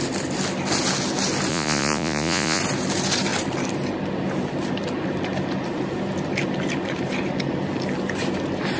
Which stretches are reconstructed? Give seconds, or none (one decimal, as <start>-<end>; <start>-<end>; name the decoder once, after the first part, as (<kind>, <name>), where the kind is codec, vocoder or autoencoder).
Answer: 1.5-2.6 (vocoder, Vocos)